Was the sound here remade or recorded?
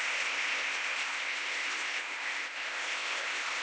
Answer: remade